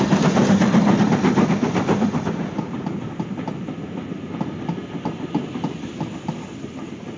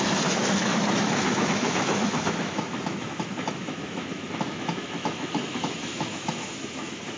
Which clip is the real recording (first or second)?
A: first